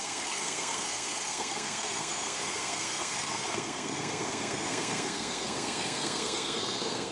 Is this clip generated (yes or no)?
yes